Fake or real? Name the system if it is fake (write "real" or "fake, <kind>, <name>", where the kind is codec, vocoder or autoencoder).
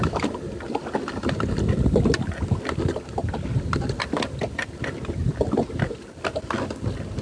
real